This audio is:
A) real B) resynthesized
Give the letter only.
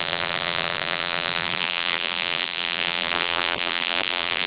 B